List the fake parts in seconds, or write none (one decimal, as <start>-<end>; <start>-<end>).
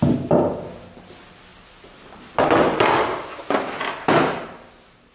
none